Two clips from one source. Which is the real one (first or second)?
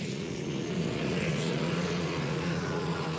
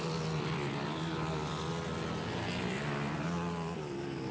second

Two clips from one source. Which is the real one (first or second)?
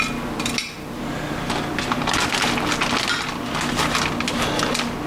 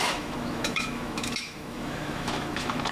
first